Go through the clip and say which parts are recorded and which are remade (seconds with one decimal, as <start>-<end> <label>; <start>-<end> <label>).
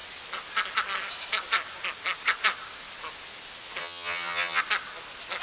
0.0-3.8 recorded; 3.8-4.6 remade; 4.6-5.4 recorded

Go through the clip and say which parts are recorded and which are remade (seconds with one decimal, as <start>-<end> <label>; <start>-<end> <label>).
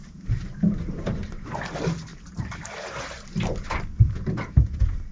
0.0-1.7 remade; 1.7-2.1 recorded; 2.1-3.3 remade; 3.3-5.1 recorded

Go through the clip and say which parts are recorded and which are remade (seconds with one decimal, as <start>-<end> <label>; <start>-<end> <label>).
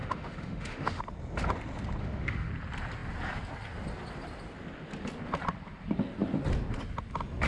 0.0-1.0 remade; 1.0-2.0 recorded; 2.0-2.5 remade; 2.5-7.5 recorded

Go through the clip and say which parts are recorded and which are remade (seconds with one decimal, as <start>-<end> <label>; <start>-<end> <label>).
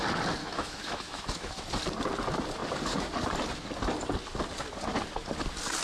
0.0-0.4 recorded; 0.4-1.6 remade; 1.6-5.8 recorded